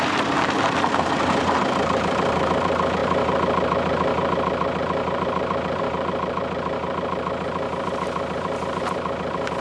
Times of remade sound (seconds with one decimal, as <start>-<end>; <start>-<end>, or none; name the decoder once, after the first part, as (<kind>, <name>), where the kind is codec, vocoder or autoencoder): 0.0-9.6 (vocoder, BigVGAN v2)